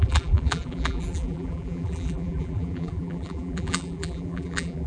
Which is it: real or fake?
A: fake